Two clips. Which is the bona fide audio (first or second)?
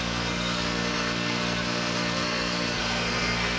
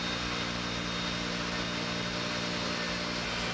second